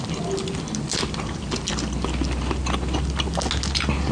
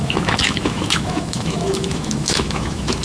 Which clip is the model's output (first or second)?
second